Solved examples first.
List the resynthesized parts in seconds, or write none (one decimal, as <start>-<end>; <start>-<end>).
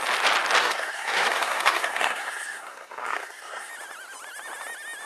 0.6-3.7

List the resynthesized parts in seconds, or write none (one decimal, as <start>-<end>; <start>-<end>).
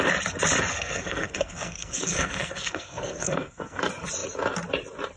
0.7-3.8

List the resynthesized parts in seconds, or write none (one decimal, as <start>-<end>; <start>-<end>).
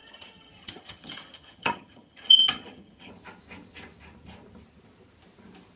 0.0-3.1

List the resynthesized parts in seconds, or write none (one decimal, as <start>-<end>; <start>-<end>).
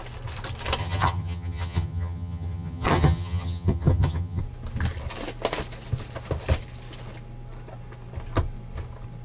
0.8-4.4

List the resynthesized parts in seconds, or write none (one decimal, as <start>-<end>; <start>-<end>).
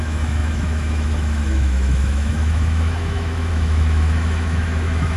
0.0-5.2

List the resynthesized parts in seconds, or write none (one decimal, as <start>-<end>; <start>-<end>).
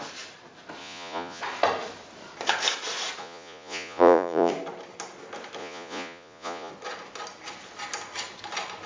0.8-1.4; 3.2-4.5; 5.6-6.7